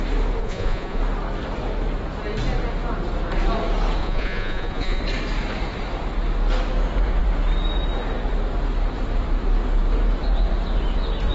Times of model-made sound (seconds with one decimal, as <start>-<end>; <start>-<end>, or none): 0.4-1.0; 4.0-5.0